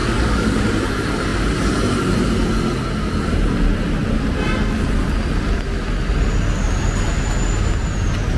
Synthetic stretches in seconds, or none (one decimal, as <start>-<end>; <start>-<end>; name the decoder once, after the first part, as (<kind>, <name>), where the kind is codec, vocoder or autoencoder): 0.0-0.7 (codec, DAC)